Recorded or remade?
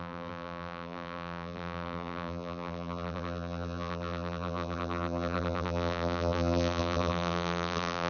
remade